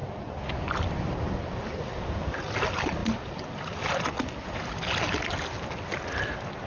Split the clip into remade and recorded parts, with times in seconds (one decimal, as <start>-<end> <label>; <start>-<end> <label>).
0.0-6.7 recorded